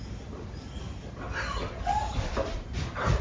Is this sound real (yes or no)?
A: yes